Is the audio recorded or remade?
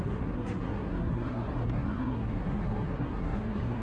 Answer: remade